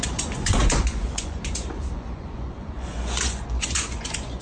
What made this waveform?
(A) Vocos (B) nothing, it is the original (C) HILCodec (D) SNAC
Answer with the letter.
A